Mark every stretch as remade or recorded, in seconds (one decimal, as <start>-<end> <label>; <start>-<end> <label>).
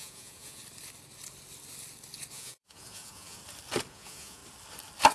0.0-0.6 remade; 0.6-2.3 recorded; 2.3-3.4 remade; 3.4-3.9 recorded; 3.9-4.4 remade; 4.4-5.1 recorded